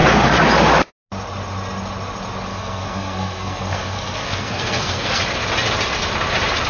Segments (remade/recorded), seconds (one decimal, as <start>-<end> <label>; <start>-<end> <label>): 0.0-2.5 recorded; 2.5-5.2 remade; 5.2-6.7 recorded